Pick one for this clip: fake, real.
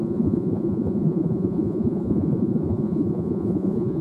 fake